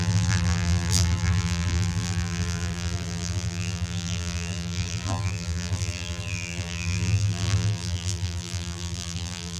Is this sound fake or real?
fake